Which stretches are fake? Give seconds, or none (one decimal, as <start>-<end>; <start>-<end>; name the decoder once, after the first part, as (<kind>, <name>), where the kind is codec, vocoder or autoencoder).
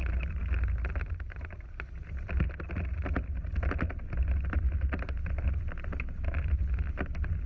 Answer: none